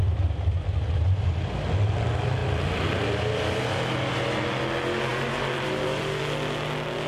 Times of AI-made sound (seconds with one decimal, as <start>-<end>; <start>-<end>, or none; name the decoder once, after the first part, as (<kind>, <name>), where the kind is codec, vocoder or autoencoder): 2.4-3.6 (vocoder, BigVGAN v2); 5.1-6.2